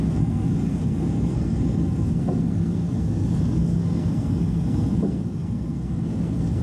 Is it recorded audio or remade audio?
remade